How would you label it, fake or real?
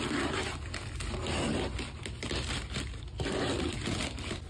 real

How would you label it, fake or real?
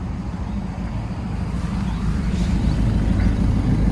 real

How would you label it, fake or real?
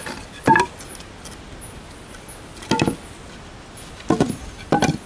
real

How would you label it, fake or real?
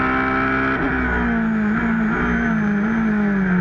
real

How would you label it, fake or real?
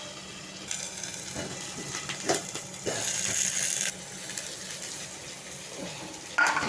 real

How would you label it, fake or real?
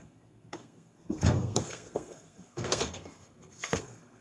fake